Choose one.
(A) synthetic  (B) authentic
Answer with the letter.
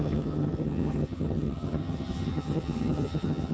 A